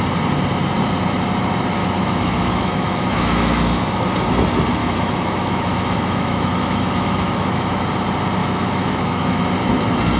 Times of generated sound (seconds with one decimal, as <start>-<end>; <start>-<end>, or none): 1.8-3.8; 4.8-7.8; 8.4-9.5